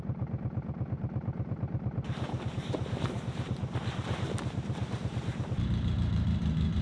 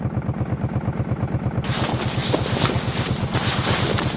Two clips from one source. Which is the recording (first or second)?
second